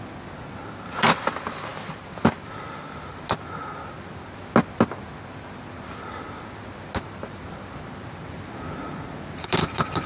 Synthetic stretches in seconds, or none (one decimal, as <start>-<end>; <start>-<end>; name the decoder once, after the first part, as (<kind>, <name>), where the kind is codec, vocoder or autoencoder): none